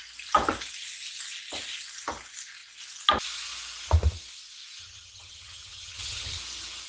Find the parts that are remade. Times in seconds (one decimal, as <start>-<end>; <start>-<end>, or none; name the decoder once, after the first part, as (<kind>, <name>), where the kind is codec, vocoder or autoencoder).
4.8-6.4 (vocoder, HiFi-GAN)